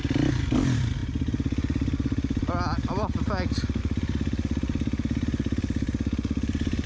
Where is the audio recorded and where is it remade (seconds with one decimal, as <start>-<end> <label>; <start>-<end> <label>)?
0.0-6.9 recorded